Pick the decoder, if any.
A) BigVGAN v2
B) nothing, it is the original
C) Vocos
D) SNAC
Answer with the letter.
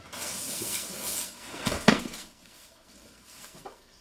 D